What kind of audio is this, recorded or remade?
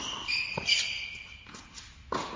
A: recorded